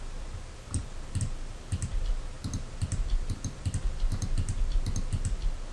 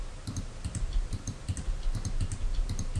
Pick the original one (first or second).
first